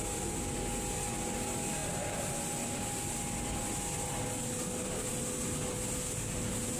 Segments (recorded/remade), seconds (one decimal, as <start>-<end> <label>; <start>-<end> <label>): 0.0-6.8 recorded